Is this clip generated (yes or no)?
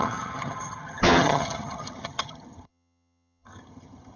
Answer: yes